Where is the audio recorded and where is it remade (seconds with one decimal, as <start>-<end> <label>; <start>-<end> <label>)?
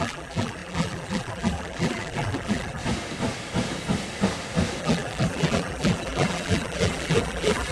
0.0-2.8 remade; 2.8-4.8 recorded; 4.8-7.7 remade